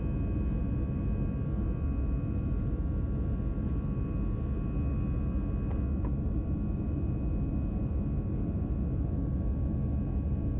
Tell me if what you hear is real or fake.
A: real